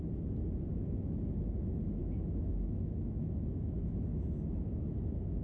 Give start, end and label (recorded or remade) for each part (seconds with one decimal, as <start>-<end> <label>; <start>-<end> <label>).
0.0-0.7 recorded; 0.7-1.2 remade; 1.2-2.0 recorded; 2.0-5.4 remade